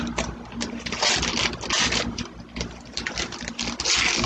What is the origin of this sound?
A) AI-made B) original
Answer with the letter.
B